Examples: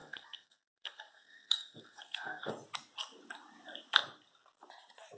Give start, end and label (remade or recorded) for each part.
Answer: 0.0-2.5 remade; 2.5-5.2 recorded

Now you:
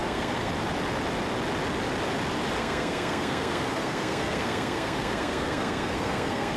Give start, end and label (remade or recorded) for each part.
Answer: 0.0-0.5 remade; 0.5-2.6 recorded; 2.6-6.6 remade

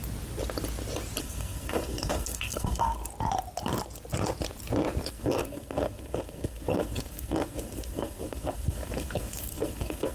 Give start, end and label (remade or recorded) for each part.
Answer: 0.0-1.2 recorded; 1.2-3.0 remade; 3.0-5.1 recorded; 5.1-10.1 remade

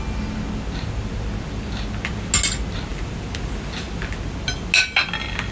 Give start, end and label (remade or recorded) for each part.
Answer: 0.0-5.5 recorded

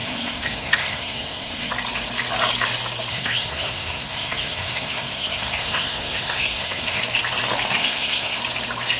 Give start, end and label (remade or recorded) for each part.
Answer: 0.0-1.7 remade; 1.7-3.1 recorded; 3.1-7.0 remade; 7.0-7.8 recorded; 7.8-8.4 remade; 8.4-9.0 recorded

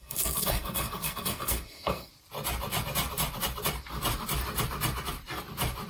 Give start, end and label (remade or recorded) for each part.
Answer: 0.0-2.1 remade; 2.1-5.9 recorded

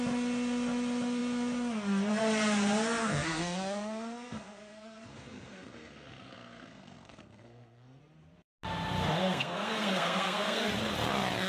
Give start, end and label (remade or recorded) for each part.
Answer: 0.0-3.0 recorded; 3.0-8.0 remade; 8.0-9.2 recorded; 9.2-10.6 remade; 10.6-11.5 recorded

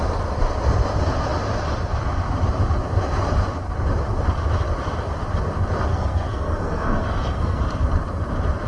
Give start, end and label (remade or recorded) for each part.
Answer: 0.0-5.9 recorded; 5.9-7.6 remade; 7.6-8.7 recorded